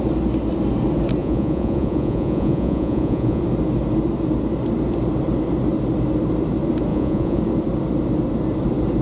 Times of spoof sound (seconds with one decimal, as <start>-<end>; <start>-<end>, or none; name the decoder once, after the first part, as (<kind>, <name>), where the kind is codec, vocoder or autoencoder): 1.2-3.4 (vocoder, Vocos); 6.9-7.4